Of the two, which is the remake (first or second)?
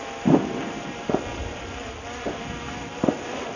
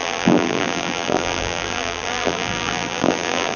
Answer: second